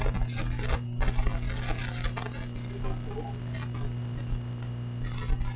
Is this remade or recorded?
recorded